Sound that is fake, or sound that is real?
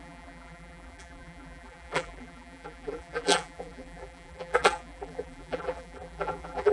fake